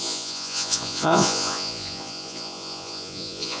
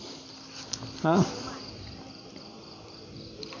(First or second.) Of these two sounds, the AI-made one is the first